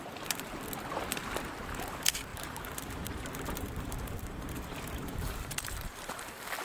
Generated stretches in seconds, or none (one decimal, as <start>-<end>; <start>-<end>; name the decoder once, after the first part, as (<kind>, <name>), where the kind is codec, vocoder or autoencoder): 2.3-6.1 (vocoder, BigVGAN v2)

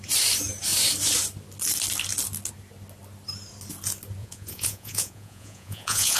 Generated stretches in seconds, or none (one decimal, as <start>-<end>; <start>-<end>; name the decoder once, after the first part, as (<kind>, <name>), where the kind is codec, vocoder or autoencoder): 4.2-6.2 (vocoder, Vocos)

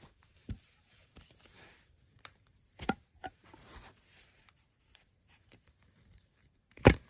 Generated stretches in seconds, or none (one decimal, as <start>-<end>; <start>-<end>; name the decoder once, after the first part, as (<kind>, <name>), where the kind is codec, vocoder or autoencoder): 0.0-7.1 (vocoder, BigVGAN v2)

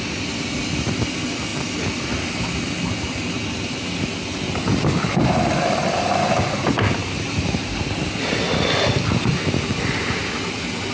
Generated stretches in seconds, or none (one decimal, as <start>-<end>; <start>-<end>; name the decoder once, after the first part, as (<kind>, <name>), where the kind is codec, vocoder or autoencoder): 7.0-7.8 (vocoder, BigVGAN v2)

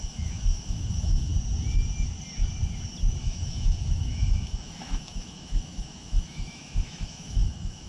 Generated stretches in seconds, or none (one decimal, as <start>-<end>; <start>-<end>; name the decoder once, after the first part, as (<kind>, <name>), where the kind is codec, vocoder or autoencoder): 0.0-1.3 (autoencoder, DAC-VAE); 3.2-7.9

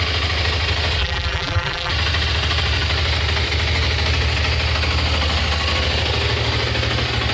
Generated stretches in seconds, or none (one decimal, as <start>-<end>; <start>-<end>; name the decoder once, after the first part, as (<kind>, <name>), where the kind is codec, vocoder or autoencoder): 1.0-1.9 (vocoder, BigVGAN v2)